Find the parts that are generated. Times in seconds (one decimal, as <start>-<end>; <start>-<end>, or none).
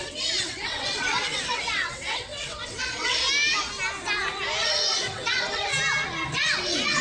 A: 0.0-3.2; 4.6-5.7; 6.3-7.0